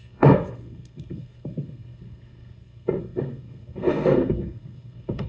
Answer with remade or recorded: remade